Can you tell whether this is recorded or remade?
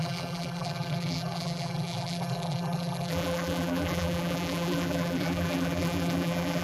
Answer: remade